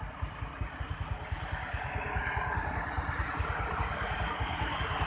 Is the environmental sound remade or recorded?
recorded